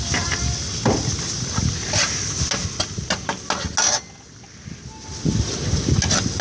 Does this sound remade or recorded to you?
recorded